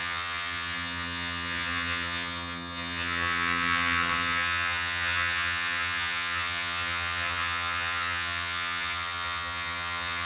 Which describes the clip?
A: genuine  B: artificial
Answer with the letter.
B